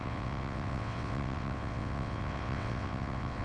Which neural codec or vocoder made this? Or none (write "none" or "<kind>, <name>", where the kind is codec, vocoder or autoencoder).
vocoder, WaveNeXt